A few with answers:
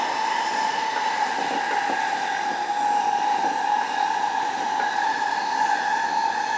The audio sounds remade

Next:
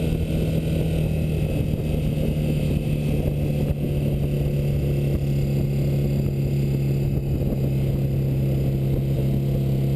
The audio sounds recorded